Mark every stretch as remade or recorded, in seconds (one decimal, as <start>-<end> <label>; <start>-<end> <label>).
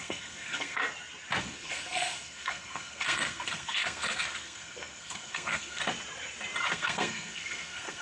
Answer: 0.0-0.8 remade; 0.8-1.4 recorded; 1.4-5.8 remade; 5.8-6.7 recorded; 6.7-8.0 remade